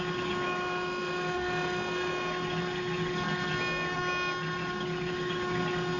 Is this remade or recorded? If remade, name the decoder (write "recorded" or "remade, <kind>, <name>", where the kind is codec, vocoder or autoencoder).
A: recorded